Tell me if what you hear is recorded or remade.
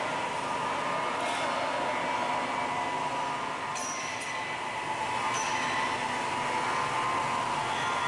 recorded